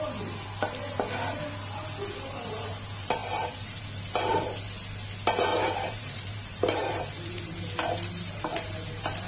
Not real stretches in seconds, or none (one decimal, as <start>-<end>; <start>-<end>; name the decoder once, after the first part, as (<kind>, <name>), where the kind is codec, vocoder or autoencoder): 3.2-3.8 (vocoder, BigVGAN v2); 5.5-7.0